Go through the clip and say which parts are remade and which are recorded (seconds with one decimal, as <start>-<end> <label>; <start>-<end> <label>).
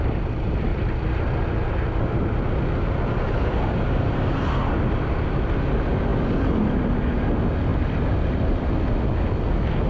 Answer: 0.0-0.7 recorded; 0.7-1.7 remade; 1.7-7.7 recorded; 7.7-8.6 remade; 8.6-9.9 recorded